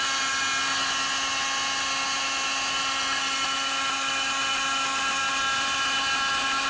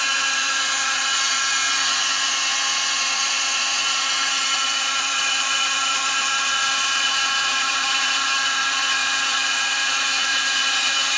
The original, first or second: first